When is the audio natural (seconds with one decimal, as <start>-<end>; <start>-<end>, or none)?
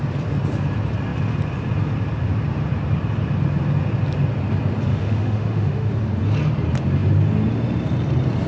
0.0-4.9; 5.9-8.5